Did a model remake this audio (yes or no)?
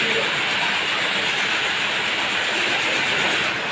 no